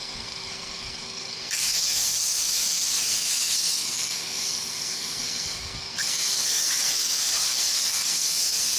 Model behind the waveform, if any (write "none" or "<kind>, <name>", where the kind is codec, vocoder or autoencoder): codec, SNAC